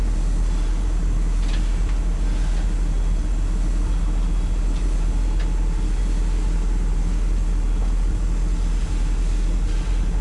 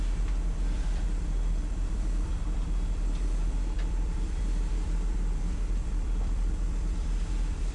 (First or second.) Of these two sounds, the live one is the first